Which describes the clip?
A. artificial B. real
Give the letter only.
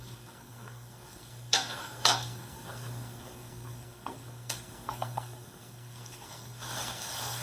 A